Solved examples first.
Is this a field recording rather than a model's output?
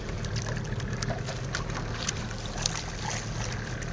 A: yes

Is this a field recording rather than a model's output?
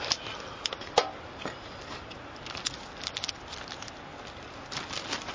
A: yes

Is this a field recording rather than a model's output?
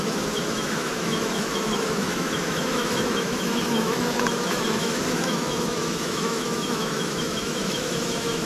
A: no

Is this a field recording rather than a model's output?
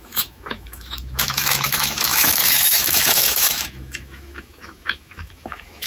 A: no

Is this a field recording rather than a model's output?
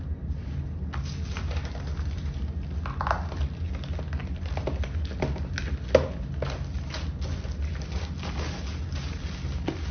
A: yes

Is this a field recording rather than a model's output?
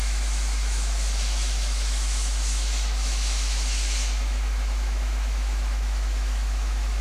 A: no